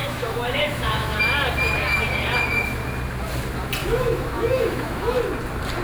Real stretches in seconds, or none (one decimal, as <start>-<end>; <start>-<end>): 1.2-3.8; 5.2-5.8